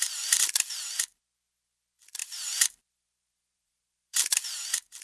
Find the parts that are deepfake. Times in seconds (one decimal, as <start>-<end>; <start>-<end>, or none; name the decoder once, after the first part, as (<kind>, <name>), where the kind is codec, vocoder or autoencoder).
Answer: 2.2-4.4 (vocoder, BigVGAN v2)